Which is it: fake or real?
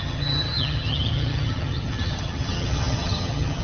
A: fake